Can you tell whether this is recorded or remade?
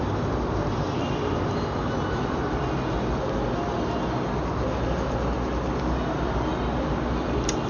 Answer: recorded